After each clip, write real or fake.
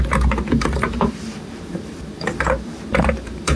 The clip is fake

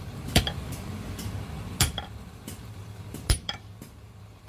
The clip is fake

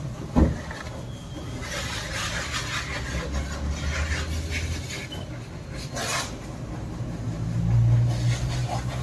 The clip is real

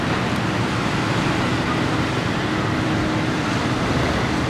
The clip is real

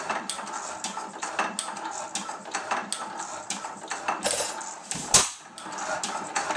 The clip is real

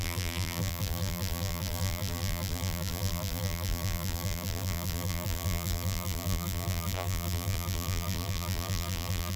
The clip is fake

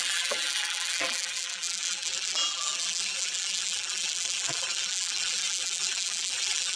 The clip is fake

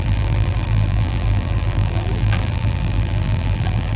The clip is fake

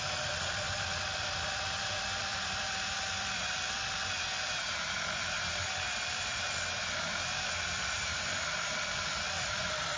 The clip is fake